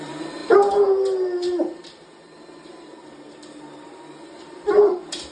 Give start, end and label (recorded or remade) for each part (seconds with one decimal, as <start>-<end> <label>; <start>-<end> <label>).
0.0-5.3 remade